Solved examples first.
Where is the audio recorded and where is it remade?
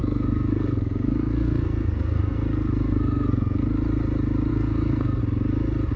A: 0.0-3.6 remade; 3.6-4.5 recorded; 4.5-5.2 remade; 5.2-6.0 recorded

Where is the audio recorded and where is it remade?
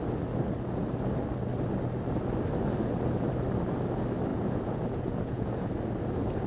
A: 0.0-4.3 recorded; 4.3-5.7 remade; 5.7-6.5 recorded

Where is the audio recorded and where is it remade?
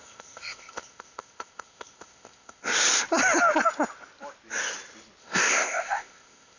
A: 0.0-2.7 remade; 2.7-5.2 recorded; 5.2-6.6 remade